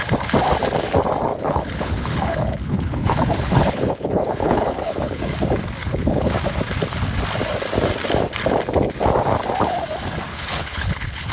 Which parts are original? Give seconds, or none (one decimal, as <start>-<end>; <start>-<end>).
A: 0.0-1.3; 5.2-5.8; 6.3-10.3